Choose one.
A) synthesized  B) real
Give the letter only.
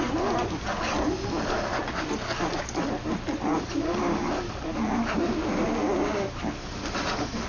B